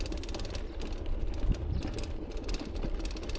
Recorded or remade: recorded